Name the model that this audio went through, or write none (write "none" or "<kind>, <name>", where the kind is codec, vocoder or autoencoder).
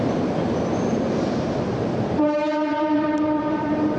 vocoder, BigVGAN v2